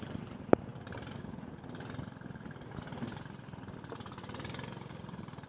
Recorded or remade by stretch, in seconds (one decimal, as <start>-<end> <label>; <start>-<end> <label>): 0.0-5.5 recorded